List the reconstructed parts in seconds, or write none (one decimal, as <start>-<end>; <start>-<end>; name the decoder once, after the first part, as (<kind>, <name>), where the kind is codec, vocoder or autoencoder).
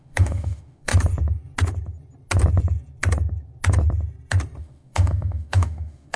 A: 0.0-0.9 (autoencoder, DAC-VAE); 4.6-6.2